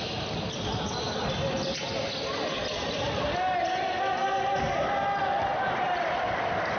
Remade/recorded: recorded